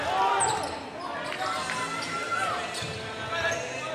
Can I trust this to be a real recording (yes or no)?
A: yes